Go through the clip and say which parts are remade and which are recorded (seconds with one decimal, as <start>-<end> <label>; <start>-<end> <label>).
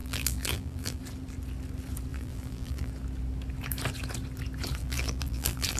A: 0.0-1.0 remade; 1.0-2.1 recorded; 2.1-2.9 remade; 2.9-4.8 recorded; 4.8-5.8 remade